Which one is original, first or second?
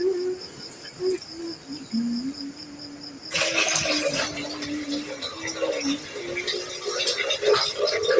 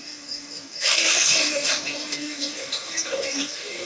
first